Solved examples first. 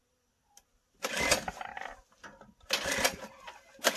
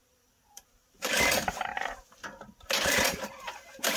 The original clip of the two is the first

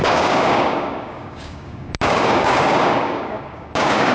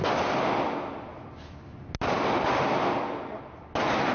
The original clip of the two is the second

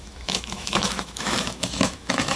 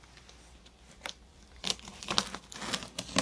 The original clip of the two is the second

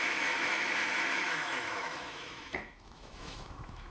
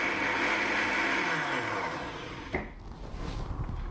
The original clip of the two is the second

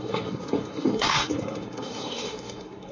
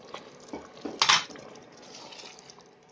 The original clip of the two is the second